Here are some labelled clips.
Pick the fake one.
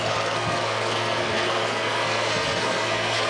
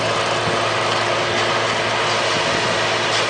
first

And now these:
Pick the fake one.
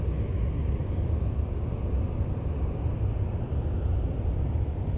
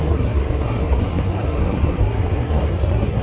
second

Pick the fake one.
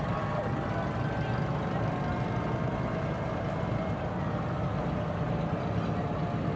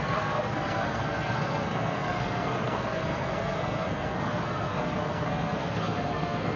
second